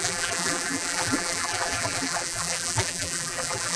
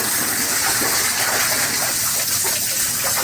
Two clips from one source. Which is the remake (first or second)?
first